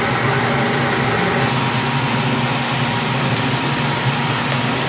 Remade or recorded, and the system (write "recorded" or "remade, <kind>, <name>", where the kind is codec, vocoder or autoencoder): recorded